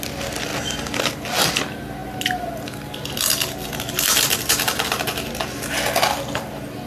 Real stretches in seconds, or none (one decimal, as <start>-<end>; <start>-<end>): 0.0-6.9